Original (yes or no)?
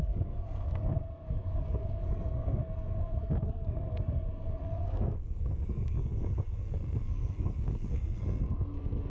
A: no